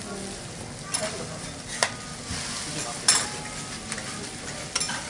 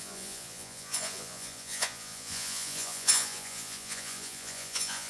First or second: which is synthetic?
second